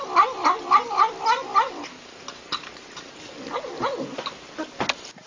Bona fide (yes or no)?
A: yes